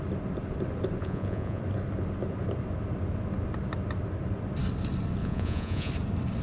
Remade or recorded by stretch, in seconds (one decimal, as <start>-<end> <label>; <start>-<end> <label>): 0.0-1.0 recorded; 1.0-1.6 remade; 1.6-5.2 recorded; 5.2-5.9 remade; 5.9-6.4 recorded